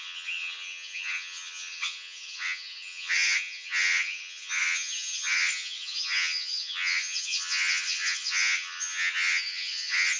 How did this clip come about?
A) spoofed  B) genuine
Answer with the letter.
A